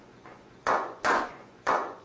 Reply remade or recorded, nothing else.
remade